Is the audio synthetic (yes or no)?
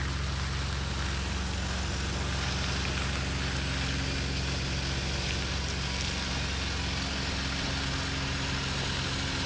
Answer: no